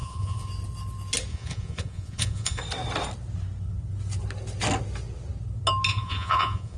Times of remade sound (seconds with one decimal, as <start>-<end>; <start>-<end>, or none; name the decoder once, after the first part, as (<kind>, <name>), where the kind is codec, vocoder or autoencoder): 0.0-0.5 (vocoder, Vocos); 1.3-2.6; 5.9-6.8